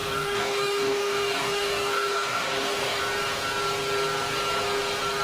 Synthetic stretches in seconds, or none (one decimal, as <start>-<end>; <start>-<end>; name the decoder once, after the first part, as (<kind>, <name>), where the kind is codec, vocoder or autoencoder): 0.0-3.0 (codec, DAC)